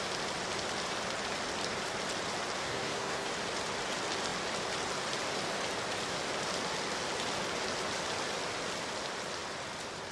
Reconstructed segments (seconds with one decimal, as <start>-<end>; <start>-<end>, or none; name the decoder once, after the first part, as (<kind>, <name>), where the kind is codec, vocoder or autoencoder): 2.6-3.3 (codec, SNAC)